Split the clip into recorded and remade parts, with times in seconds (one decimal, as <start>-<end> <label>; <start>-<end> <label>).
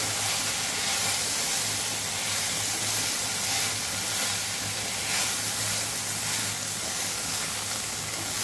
0.0-6.4 recorded; 6.4-8.4 remade